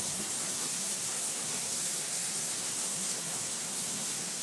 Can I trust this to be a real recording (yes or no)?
no